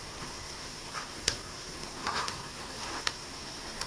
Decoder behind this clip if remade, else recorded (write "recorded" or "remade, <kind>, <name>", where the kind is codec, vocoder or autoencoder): remade, codec, SNAC